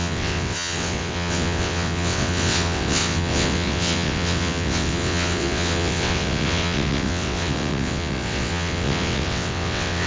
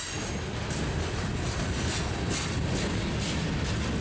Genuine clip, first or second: second